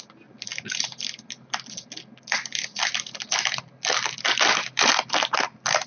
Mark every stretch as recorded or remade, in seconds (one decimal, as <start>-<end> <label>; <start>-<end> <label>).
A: 0.0-5.9 recorded